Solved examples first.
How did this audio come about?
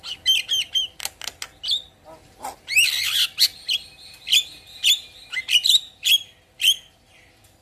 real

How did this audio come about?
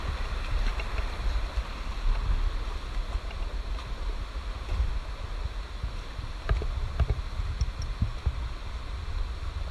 real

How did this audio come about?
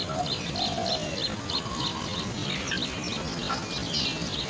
real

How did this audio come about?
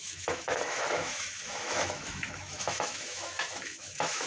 fake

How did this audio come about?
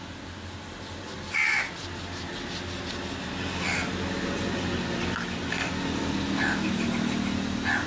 real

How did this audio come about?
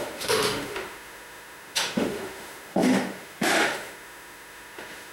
fake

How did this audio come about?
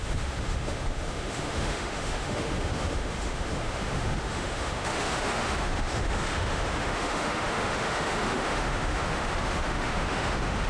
fake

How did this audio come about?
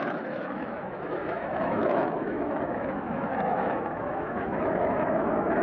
fake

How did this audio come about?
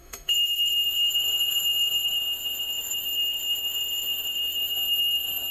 fake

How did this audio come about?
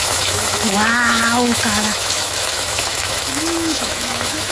fake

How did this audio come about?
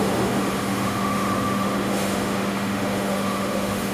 fake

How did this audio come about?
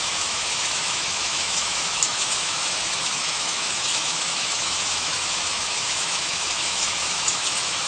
fake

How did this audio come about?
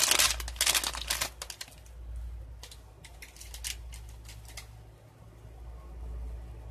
real